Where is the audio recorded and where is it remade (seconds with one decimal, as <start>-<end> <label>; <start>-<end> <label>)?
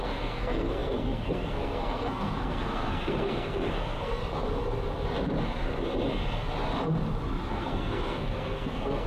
0.0-4.2 remade; 4.2-7.5 recorded; 7.5-9.1 remade